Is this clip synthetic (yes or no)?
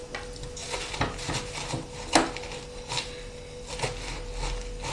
no